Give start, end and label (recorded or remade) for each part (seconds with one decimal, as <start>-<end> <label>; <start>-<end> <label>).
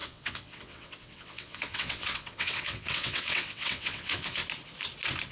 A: 0.0-4.4 remade; 4.4-5.3 recorded